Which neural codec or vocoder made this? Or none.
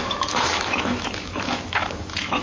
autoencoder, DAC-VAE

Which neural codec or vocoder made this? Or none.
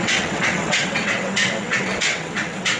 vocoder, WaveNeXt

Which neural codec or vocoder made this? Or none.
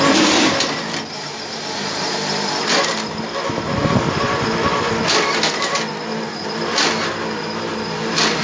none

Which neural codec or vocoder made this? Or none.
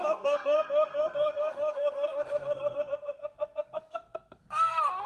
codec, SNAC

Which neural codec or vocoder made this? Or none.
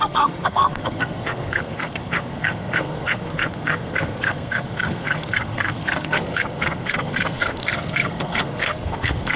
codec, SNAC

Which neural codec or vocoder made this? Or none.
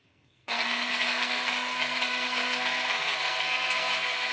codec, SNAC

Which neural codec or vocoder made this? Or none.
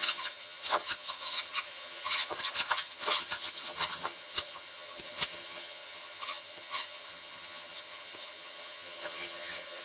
vocoder, HiFi-GAN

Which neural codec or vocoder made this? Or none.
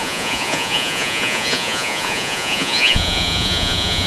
vocoder, Vocos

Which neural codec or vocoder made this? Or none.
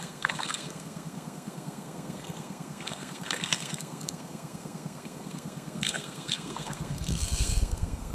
codec, SNAC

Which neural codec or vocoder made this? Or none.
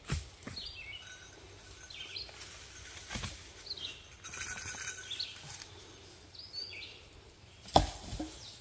none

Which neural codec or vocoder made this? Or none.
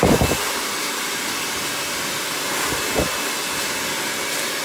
none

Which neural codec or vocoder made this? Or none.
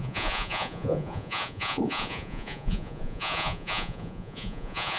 vocoder, Vocos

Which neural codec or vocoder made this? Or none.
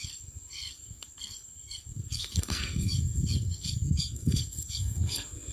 codec, SNAC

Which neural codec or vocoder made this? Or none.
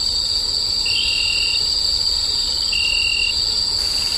none